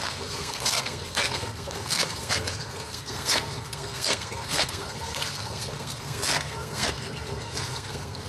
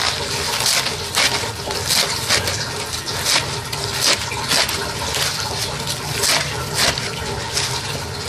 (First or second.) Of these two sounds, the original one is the second